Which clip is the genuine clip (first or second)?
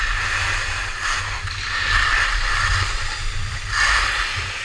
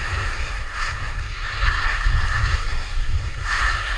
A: first